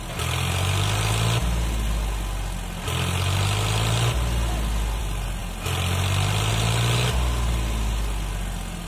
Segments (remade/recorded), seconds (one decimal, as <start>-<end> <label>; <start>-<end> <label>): 0.0-8.9 recorded